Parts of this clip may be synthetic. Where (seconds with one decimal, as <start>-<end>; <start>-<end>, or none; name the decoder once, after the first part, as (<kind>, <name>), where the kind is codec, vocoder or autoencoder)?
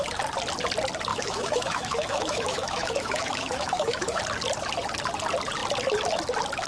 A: 1.1-4.2 (autoencoder, DAC-VAE)